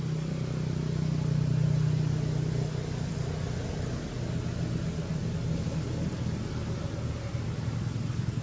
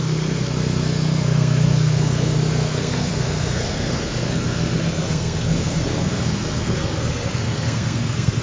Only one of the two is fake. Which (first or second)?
second